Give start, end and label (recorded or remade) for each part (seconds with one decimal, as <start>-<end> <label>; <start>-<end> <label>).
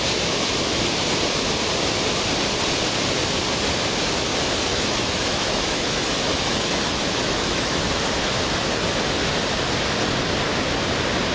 0.0-4.7 recorded; 4.7-7.8 remade; 7.8-11.3 recorded